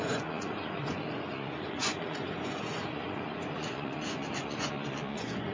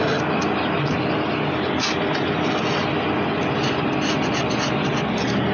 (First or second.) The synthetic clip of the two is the first